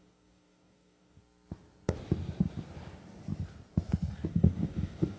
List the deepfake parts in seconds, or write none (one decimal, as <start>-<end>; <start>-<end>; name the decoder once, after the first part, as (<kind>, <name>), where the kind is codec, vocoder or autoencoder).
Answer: 0.0-1.2 (codec, DAC); 4.3-5.2